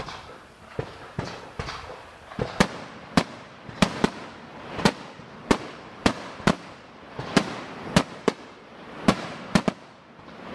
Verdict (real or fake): fake